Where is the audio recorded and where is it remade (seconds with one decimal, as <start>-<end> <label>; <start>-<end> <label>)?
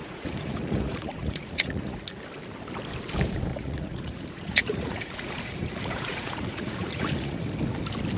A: 0.0-2.2 remade; 2.2-3.5 recorded; 3.5-7.5 remade; 7.5-8.2 recorded